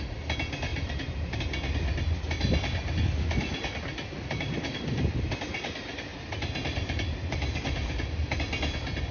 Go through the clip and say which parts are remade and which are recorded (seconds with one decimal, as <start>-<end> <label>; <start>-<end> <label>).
0.0-0.7 recorded; 0.7-1.4 remade; 1.4-6.1 recorded; 6.1-8.4 remade; 8.4-9.1 recorded